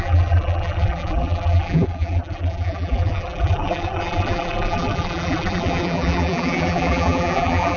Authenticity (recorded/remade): remade